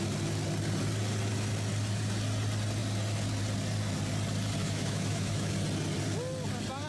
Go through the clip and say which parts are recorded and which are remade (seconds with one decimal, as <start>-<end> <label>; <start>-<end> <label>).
0.0-4.6 recorded; 4.6-5.5 remade; 5.5-6.9 recorded